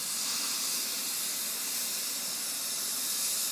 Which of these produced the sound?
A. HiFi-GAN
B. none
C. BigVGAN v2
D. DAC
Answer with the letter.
B